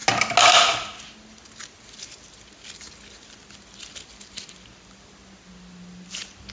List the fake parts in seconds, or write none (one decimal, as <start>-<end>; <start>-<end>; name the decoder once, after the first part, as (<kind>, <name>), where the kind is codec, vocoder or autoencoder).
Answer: none